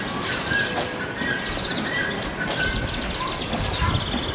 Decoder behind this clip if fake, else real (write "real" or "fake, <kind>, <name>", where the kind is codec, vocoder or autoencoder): real